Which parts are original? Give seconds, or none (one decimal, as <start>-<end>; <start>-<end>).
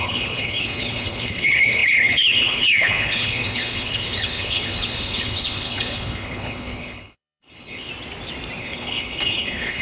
7.9-8.6